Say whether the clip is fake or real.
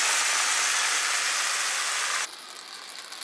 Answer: real